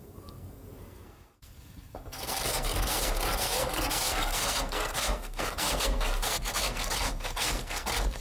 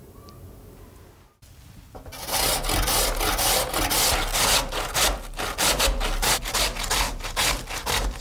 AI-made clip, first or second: first